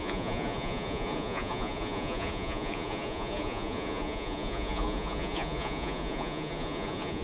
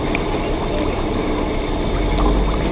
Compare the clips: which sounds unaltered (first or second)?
second